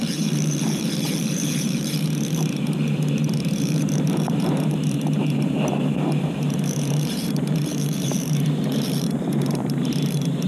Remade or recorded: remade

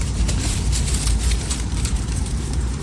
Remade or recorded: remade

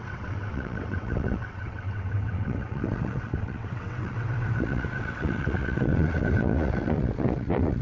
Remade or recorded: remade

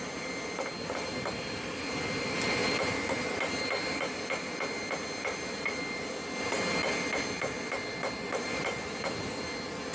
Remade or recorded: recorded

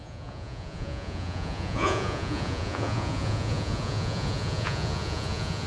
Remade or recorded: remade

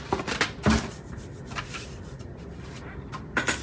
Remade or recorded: recorded